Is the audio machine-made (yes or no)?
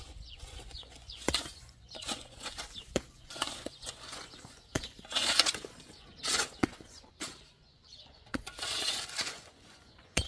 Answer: yes